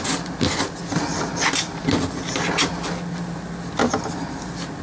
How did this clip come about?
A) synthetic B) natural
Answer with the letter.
B